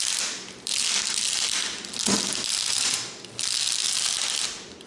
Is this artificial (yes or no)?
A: no